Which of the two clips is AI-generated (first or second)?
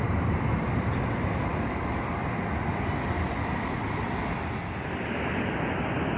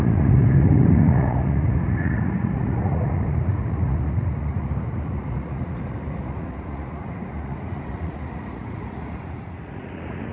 second